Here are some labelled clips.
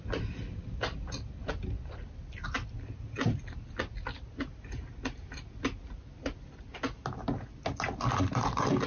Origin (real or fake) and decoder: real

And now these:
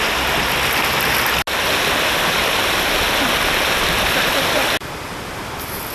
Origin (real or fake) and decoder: real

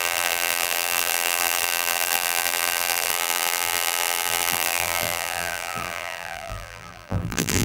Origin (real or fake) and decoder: fake, vocoder, BigVGAN v2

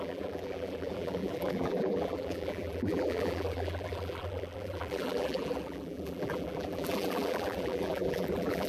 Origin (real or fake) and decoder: fake, vocoder, BigVGAN v2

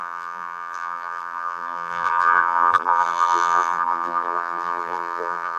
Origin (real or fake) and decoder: fake, vocoder, BigVGAN v2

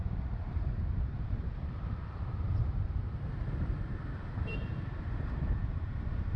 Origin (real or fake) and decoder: fake, vocoder, BigVGAN v2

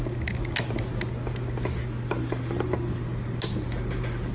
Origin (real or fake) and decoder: real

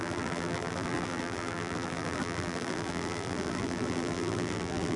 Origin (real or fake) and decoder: fake, vocoder, BigVGAN v2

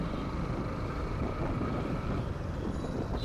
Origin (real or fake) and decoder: real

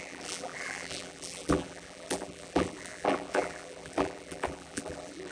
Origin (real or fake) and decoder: fake, vocoder, BigVGAN v2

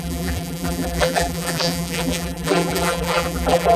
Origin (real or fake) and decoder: fake, vocoder, BigVGAN v2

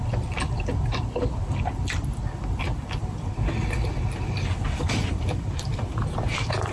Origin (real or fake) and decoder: fake, vocoder, BigVGAN v2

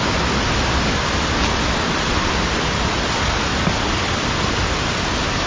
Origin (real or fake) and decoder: real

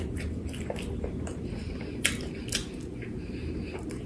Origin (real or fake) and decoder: fake, vocoder, BigVGAN v2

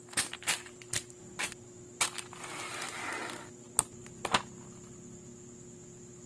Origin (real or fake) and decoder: real